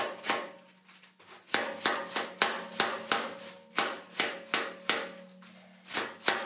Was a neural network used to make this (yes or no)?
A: no